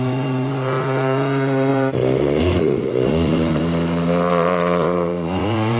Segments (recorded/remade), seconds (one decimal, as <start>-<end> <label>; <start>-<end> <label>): 0.0-3.6 remade; 3.6-4.3 recorded; 4.3-5.8 remade